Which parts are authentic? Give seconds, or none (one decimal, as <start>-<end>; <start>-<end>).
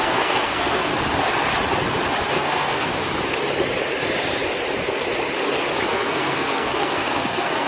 0.9-2.3; 2.9-5.9